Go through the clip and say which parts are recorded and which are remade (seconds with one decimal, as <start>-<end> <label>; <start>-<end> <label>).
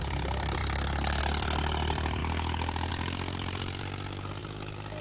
0.0-0.6 remade; 0.6-1.2 recorded; 1.2-2.2 remade; 2.2-2.9 recorded; 2.9-4.4 remade; 4.4-5.0 recorded